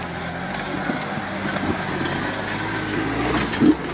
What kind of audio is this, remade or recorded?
recorded